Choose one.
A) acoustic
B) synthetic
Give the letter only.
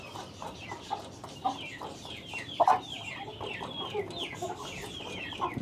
A